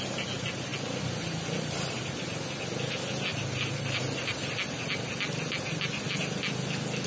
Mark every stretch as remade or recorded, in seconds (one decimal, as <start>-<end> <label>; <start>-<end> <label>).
0.0-7.1 recorded